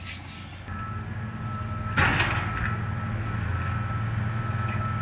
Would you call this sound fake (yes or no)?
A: no